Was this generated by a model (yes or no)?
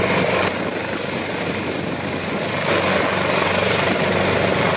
no